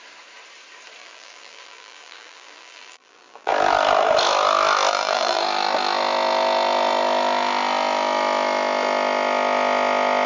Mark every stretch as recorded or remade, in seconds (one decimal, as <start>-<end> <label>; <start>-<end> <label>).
0.0-1.0 recorded; 1.0-3.5 remade; 3.5-4.9 recorded; 4.9-5.4 remade; 5.4-10.3 recorded